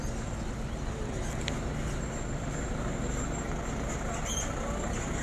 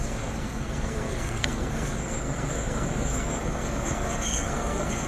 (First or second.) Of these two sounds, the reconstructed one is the second